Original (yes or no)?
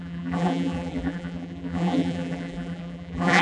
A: no